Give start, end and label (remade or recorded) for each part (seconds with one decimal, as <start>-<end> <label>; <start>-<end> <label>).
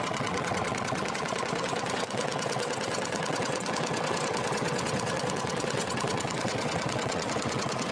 0.0-7.9 remade